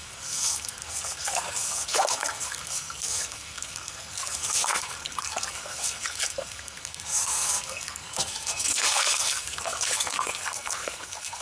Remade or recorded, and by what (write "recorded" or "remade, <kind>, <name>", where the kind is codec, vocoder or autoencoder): remade, codec, SNAC